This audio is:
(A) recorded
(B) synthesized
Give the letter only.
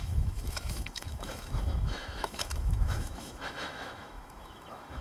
B